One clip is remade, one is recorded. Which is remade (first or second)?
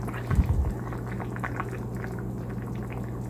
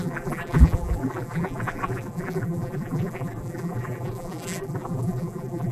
second